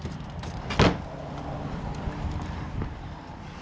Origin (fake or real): real